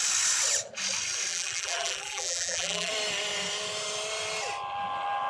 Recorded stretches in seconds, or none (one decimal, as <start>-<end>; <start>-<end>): 0.0-1.3; 2.9-5.3